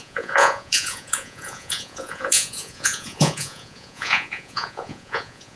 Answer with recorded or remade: remade